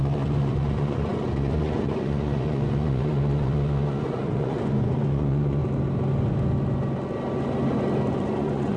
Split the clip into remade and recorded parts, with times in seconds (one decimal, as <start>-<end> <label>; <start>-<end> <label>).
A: 0.0-5.6 remade; 5.6-8.2 recorded; 8.2-8.8 remade